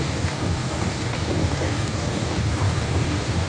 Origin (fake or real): fake